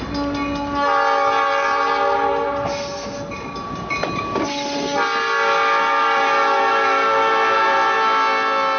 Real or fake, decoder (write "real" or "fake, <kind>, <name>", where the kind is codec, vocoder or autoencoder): real